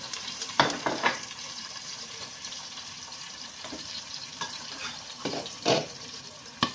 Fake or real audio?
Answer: fake